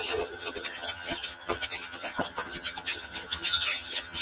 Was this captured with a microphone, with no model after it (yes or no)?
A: no